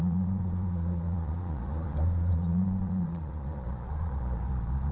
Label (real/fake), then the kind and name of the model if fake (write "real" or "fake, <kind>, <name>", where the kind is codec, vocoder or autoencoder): fake, vocoder, Vocos